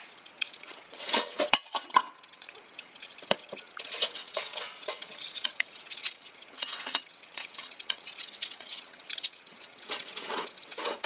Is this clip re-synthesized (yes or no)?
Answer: yes